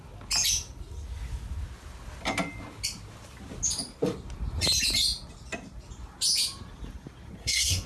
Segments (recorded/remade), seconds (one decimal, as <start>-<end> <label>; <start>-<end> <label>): 0.0-7.4 recorded; 7.4-7.9 remade